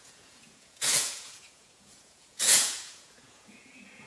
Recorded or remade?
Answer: remade